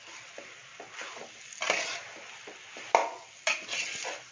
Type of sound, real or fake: real